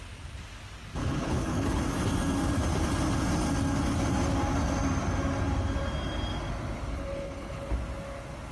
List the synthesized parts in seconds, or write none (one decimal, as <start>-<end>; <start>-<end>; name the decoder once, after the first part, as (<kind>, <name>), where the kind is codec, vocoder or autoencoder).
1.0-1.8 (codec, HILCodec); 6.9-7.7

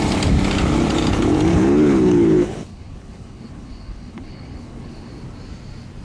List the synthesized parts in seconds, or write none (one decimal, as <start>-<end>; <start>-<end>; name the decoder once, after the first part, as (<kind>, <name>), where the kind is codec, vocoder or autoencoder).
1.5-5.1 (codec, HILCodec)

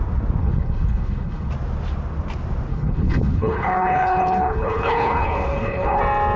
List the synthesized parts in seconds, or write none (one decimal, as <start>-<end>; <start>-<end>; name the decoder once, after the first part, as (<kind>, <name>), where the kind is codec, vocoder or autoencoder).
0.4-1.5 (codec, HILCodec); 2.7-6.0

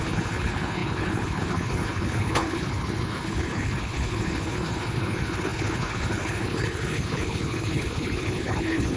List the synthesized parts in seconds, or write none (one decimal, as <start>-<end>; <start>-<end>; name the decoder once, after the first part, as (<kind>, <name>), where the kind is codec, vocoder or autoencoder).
0.0-9.0 (codec, HILCodec)

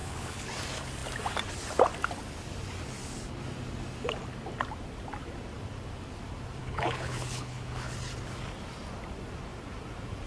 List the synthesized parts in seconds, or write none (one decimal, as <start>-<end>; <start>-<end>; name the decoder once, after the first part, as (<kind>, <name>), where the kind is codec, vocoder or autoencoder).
0.0-0.5 (codec, HILCodec); 6.6-7.9

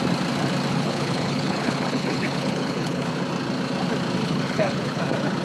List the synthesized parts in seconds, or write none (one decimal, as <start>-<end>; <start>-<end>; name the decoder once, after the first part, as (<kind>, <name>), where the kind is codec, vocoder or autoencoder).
0.7-3.1 (codec, HILCodec); 4.2-5.0